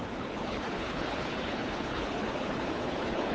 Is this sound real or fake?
fake